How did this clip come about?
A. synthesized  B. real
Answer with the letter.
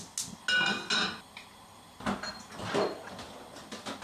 B